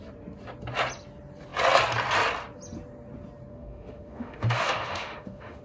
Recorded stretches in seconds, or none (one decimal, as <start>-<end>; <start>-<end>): 0.0-3.5